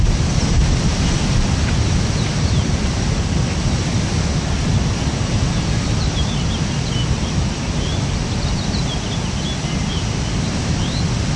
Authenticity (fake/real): real